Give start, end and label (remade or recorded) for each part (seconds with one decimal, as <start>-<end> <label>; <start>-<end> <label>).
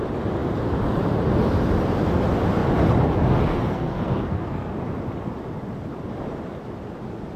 0.0-3.5 recorded; 3.5-4.7 remade; 4.7-7.4 recorded